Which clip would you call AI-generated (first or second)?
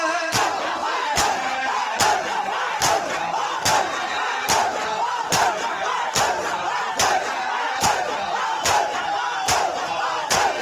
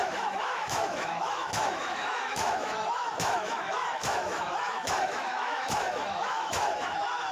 second